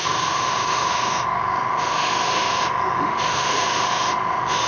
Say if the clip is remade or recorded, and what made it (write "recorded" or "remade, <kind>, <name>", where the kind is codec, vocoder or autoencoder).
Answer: remade, autoencoder, DAC-VAE